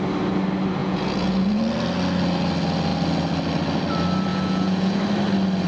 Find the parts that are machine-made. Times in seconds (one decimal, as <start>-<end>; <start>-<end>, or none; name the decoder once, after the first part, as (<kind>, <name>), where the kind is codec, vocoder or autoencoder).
0.8-1.6 (vocoder, Vocos); 4.3-5.0